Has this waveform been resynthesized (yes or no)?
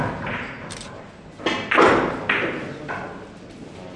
no